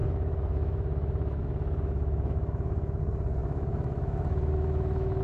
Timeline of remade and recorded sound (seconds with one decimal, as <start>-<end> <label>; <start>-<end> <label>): 0.0-3.0 remade; 3.0-3.4 recorded; 3.4-5.2 remade